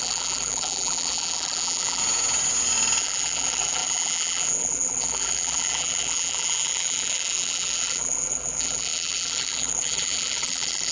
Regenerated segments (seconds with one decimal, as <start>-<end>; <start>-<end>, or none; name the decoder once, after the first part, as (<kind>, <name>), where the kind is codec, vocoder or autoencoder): 0.0-2.0 (vocoder, BigVGAN v2); 3.0-10.9